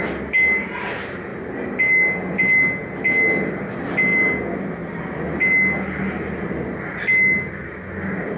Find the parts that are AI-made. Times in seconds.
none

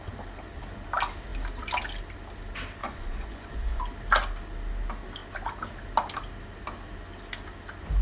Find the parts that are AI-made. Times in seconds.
2.8-3.8 (vocoder, Vocos)

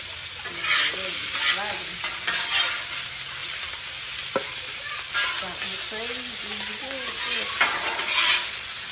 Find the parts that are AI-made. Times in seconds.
3.4-4.9 (vocoder, BigVGAN v2)

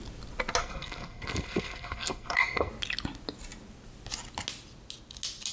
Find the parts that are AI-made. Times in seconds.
0.6-2.7 (codec, SNAC)

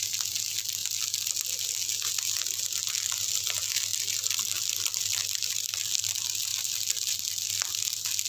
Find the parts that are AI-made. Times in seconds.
0.8-1.3 (vocoder, BigVGAN v2); 3.9-5.0; 6.5-7.2

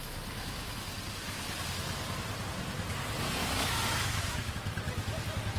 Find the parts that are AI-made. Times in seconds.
0.0-0.9 (autoencoder, DAC-VAE); 3.4-4.5

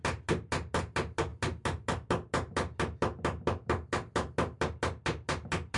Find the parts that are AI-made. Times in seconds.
none